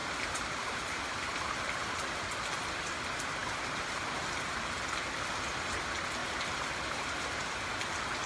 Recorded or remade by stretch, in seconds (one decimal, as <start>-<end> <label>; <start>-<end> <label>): 0.0-1.5 remade; 1.5-6.2 recorded; 6.2-7.7 remade; 7.7-8.3 recorded